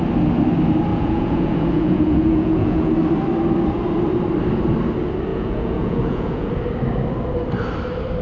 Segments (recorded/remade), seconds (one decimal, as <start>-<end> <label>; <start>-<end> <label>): 0.0-0.9 recorded; 0.9-2.9 remade; 2.9-5.3 recorded; 5.3-6.5 remade; 6.5-8.2 recorded